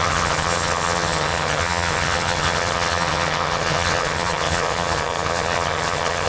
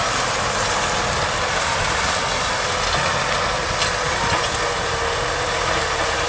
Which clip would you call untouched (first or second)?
second